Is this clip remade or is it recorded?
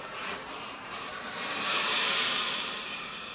remade